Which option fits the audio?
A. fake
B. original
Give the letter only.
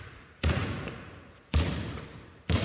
A